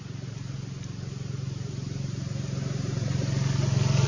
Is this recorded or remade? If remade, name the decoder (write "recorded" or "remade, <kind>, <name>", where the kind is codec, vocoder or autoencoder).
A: recorded